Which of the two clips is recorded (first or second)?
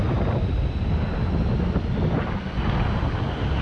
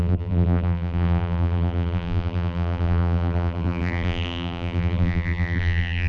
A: first